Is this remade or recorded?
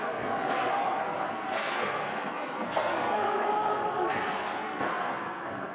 remade